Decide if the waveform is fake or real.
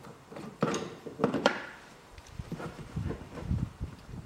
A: fake